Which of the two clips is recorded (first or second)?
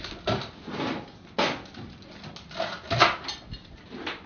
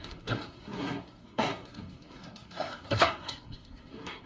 first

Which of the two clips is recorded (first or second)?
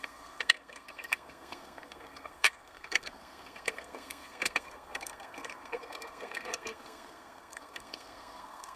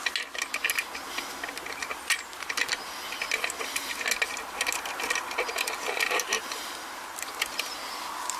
second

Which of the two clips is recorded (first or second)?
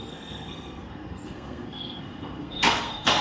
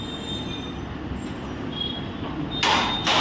second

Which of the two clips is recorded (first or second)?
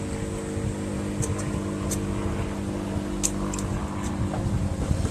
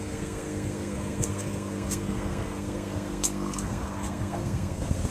first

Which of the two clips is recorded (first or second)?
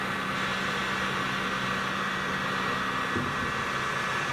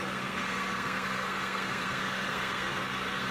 first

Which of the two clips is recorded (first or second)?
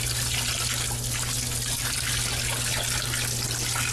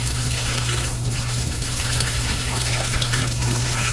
first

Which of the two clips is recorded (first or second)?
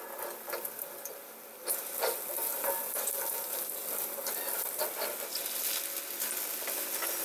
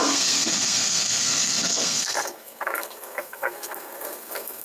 first